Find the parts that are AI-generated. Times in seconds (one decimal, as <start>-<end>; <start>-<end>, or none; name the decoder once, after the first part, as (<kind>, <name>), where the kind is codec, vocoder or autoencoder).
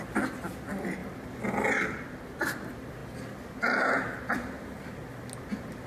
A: none